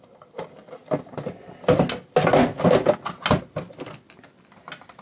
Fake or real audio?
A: real